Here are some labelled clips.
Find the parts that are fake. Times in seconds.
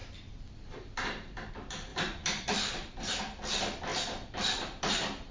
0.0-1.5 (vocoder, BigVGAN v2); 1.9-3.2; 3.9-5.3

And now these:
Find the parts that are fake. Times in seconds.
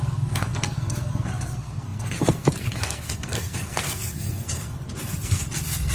0.0-5.9 (codec, SNAC)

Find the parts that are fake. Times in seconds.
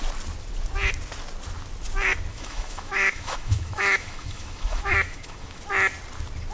2.3-5.6 (autoencoder, DAC-VAE)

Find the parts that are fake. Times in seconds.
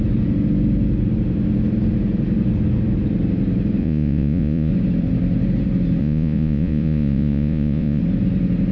3.8-4.7 (vocoder, Vocos); 6.0-8.0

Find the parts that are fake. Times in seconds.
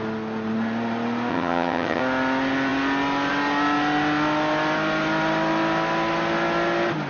1.3-2.0 (vocoder, HiFi-GAN)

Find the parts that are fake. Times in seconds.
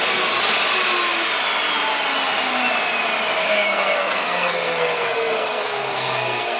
3.4-6.6 (codec, SNAC)